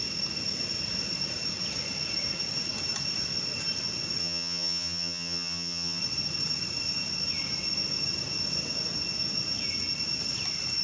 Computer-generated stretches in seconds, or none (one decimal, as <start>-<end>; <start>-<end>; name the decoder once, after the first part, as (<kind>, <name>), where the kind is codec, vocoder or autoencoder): 4.2-6.0 (vocoder, HiFi-GAN)